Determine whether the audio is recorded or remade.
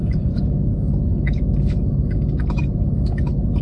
remade